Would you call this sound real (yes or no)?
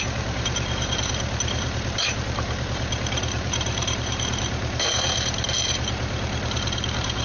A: no